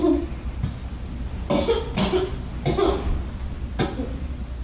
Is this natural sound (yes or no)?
yes